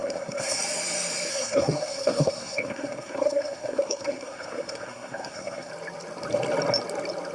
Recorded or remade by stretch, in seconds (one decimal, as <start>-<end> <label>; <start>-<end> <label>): 0.0-0.6 remade; 0.6-1.3 recorded; 1.3-5.7 remade; 5.7-7.3 recorded